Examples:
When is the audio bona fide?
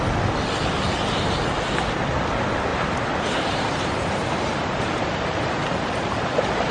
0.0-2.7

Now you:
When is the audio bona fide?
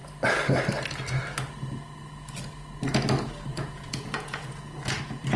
0.0-3.5; 5.0-5.4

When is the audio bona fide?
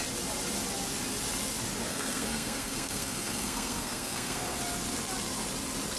0.0-1.9; 4.6-6.0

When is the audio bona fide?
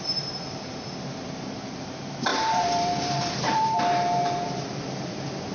0.0-2.3; 3.8-5.5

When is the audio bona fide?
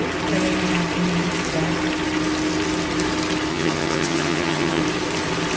0.0-3.5; 4.8-5.6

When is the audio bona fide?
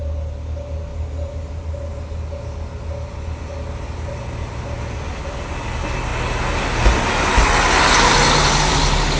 0.0-9.2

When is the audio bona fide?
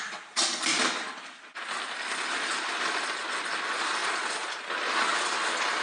0.0-5.8